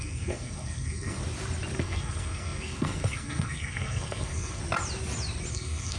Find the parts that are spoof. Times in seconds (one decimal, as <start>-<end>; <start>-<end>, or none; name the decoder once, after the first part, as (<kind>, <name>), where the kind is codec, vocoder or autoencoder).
0.0-1.2 (codec, SNAC); 1.8-4.6; 5.5-6.0